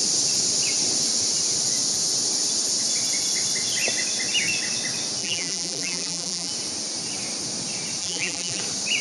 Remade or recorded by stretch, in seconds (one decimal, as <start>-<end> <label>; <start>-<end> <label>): 0.0-5.2 recorded; 5.2-6.5 remade; 6.5-8.0 recorded; 8.0-8.6 remade; 8.6-9.0 recorded